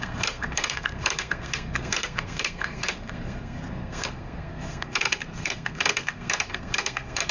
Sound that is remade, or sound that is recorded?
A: remade